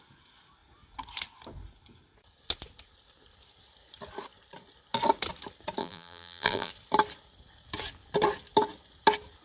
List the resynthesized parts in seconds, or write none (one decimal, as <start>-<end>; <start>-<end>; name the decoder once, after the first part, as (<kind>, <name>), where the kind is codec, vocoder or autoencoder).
5.8-6.7 (vocoder, BigVGAN v2)